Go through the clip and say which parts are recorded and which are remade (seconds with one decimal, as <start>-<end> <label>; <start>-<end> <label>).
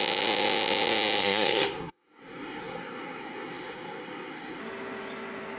0.0-1.2 recorded; 1.2-4.6 remade; 4.6-5.6 recorded